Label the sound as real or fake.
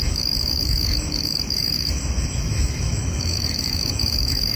fake